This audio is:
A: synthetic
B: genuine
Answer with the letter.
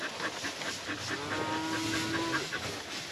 B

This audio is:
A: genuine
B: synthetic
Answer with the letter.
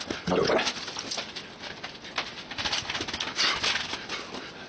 A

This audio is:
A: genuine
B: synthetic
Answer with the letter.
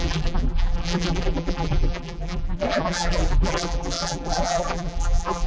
B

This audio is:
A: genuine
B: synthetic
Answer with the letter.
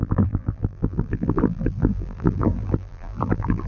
B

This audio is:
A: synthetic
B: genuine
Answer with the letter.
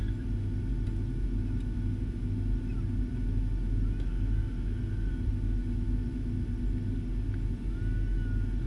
B